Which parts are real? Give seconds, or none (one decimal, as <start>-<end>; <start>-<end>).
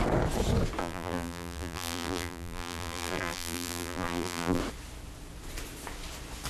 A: 0.0-0.8; 4.6-6.5